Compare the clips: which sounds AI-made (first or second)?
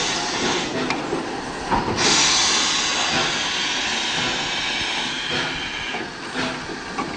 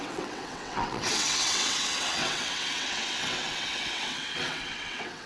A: second